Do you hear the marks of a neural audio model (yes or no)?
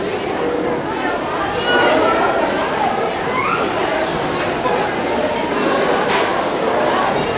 no